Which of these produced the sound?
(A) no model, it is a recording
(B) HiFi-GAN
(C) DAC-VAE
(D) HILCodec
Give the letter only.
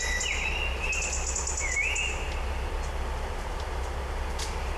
A